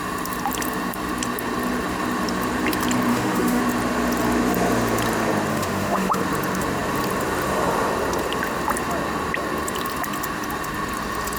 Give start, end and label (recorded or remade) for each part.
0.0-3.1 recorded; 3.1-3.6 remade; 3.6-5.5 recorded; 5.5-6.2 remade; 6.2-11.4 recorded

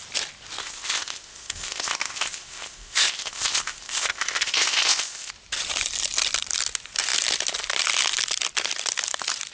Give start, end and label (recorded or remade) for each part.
0.0-0.6 recorded; 0.6-5.3 remade; 5.3-9.5 recorded

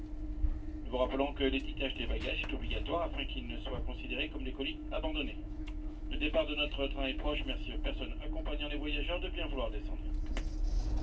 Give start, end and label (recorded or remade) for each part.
0.0-4.8 recorded; 4.8-7.4 remade; 7.4-11.0 recorded

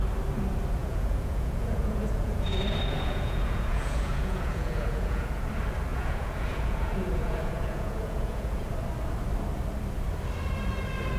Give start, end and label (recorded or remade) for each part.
0.0-0.8 recorded; 0.8-5.5 remade; 5.5-5.9 recorded; 5.9-8.7 remade; 8.7-11.2 recorded

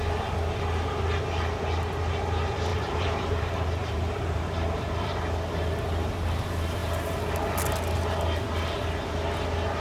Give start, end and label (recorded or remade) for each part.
0.0-2.7 recorded; 2.7-3.4 remade; 3.4-3.8 recorded; 3.8-5.1 remade; 5.1-9.8 recorded

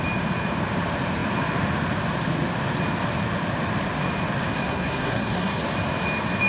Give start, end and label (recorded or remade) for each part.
0.0-4.5 recorded; 4.5-5.6 remade; 5.6-6.5 recorded

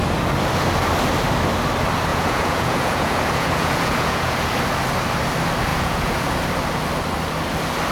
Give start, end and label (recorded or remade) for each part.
0.0-2.1 recorded; 2.1-4.5 remade; 4.5-5.7 recorded; 5.7-6.4 remade; 6.4-7.9 recorded

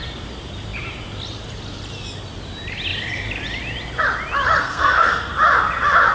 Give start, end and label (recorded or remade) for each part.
0.0-4.6 recorded; 4.6-5.3 remade; 5.3-6.1 recorded